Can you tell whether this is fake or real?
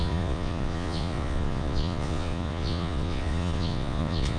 fake